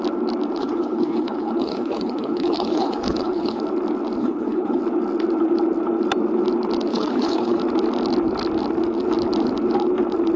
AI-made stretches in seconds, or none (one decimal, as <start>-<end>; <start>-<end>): 0.6-3.6; 4.2-4.8; 6.9-7.6